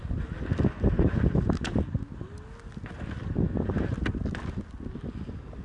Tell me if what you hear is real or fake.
real